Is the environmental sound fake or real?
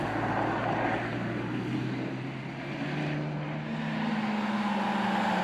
real